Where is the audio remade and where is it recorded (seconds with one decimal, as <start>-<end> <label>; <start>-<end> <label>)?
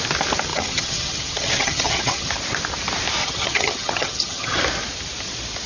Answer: 0.0-0.5 recorded; 0.5-2.3 remade; 2.3-3.2 recorded; 3.2-4.6 remade; 4.6-5.7 recorded